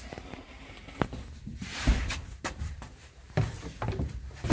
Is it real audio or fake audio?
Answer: fake